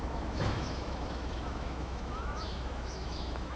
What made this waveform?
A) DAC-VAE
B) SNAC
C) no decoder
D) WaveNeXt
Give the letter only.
A